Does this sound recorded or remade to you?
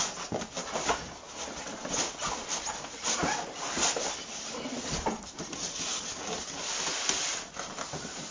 recorded